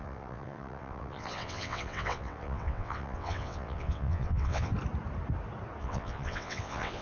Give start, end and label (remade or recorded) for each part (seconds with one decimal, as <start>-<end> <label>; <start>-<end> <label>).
0.0-4.7 remade; 4.7-5.8 recorded; 5.8-7.0 remade